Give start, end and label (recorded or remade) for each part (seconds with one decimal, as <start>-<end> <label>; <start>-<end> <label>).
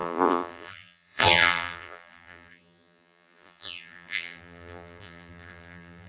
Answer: 0.0-6.1 remade